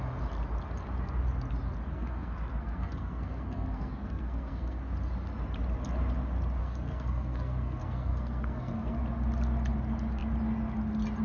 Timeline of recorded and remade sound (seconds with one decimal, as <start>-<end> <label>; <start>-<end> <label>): 0.0-1.9 recorded; 1.9-4.8 remade; 4.8-6.6 recorded; 6.6-9.0 remade; 9.0-11.2 recorded